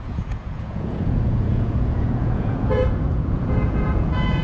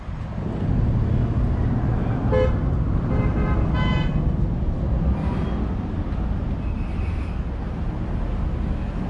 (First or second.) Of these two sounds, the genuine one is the second